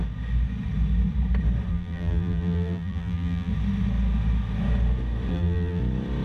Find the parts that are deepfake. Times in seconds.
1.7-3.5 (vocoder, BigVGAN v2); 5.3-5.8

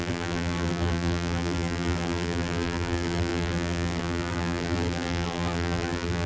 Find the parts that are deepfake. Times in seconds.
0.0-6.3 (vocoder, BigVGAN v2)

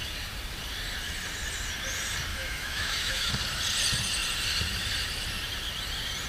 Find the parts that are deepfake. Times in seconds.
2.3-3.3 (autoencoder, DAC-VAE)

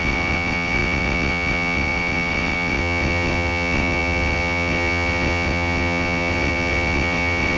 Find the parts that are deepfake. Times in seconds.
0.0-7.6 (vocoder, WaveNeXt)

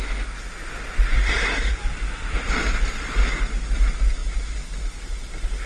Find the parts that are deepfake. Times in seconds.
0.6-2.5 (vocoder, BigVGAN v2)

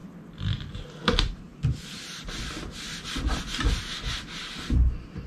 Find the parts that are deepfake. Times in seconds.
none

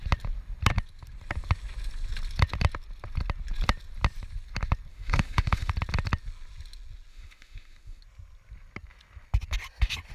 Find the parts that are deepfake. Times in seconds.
4.9-5.7 (autoencoder, DAC-VAE); 7.1-8.0